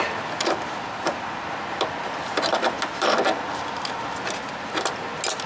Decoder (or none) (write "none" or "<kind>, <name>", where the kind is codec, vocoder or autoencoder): none